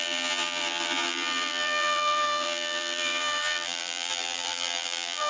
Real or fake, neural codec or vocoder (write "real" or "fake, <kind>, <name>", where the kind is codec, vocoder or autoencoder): fake, vocoder, BigVGAN v2